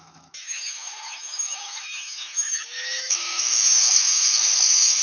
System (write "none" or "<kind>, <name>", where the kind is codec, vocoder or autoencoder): autoencoder, DAC-VAE